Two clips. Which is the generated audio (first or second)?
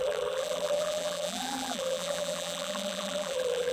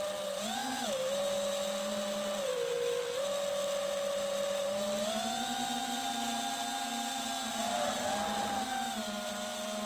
first